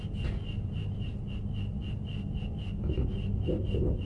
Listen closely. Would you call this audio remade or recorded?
recorded